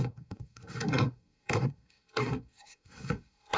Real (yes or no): no